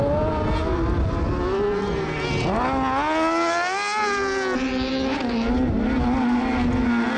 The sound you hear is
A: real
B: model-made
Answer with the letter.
A